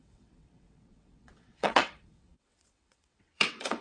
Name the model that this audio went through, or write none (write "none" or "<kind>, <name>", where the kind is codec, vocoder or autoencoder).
vocoder, WaveNeXt